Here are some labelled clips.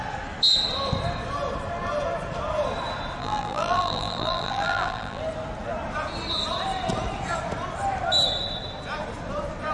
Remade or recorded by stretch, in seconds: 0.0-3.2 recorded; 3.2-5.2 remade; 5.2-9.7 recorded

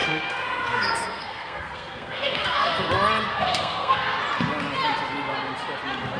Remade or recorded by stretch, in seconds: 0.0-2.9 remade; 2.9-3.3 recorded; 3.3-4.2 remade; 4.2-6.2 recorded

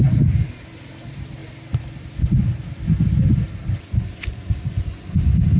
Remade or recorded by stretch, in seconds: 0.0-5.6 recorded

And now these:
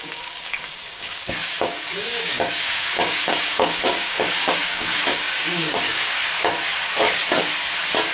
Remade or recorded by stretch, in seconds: 0.0-6.2 remade; 6.2-8.1 recorded

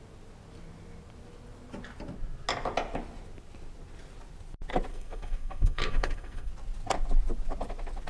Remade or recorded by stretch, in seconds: 0.0-4.9 recorded; 4.9-6.5 remade; 6.5-8.1 recorded